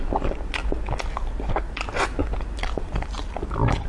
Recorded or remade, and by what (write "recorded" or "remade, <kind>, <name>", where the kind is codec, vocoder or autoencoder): recorded